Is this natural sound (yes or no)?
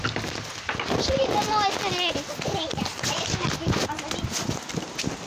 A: yes